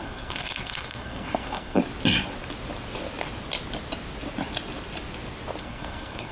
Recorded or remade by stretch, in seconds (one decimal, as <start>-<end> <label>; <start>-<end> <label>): 0.0-1.8 remade; 1.8-5.6 recorded; 5.6-6.3 remade